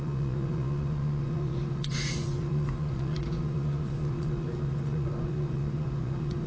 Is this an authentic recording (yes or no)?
no